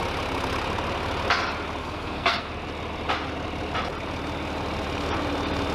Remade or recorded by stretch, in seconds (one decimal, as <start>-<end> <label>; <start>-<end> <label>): 0.0-1.8 recorded; 1.8-2.5 remade; 2.5-5.7 recorded